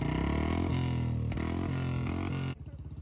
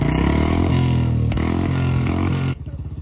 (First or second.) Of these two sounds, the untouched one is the first